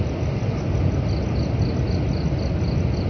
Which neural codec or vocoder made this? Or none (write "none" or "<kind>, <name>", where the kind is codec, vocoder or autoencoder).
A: none